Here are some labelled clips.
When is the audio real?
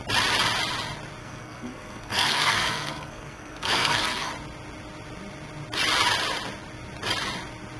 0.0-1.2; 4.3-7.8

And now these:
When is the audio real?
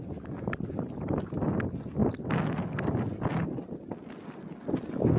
0.0-5.2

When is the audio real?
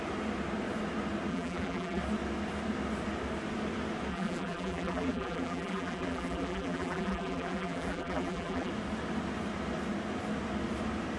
0.0-1.3; 2.0-4.1; 8.7-11.2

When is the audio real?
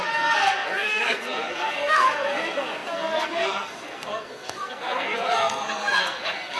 none